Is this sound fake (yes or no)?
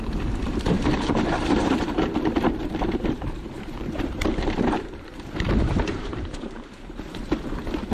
yes